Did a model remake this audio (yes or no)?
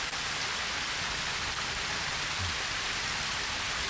no